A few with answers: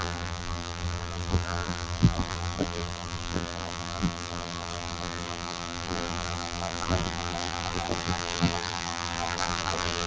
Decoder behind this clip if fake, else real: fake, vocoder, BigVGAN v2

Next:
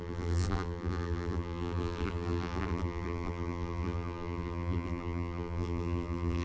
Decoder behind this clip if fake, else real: fake, vocoder, BigVGAN v2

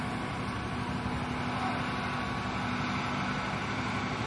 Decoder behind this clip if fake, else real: real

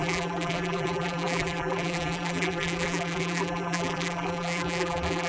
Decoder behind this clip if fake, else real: fake, vocoder, BigVGAN v2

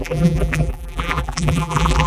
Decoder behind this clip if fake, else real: fake, vocoder, BigVGAN v2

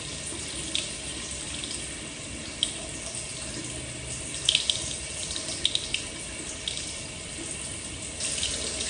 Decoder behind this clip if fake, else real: real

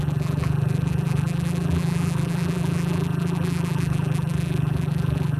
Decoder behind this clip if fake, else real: fake, vocoder, BigVGAN v2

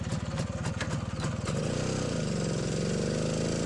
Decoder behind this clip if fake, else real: real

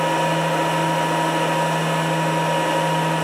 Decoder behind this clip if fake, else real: real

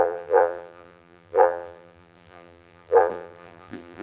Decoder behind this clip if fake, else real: fake, vocoder, BigVGAN v2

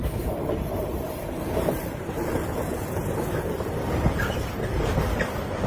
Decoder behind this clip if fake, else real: fake, vocoder, BigVGAN v2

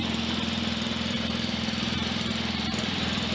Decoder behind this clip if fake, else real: fake, vocoder, BigVGAN v2